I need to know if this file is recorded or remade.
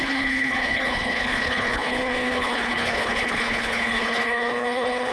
remade